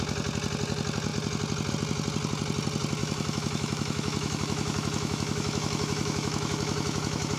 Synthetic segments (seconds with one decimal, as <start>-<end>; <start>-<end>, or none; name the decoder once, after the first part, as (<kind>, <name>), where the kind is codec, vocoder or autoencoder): 3.0-7.4 (autoencoder, DAC-VAE)

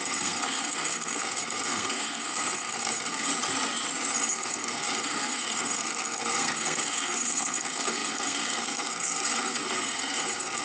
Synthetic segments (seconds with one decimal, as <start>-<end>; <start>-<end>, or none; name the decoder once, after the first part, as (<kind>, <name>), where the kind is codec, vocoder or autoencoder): 0.0-3.3 (codec, SNAC); 4.3-10.6

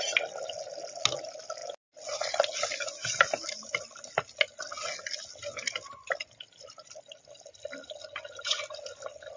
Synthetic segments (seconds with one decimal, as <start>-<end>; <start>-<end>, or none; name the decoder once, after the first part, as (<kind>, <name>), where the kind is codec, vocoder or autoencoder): none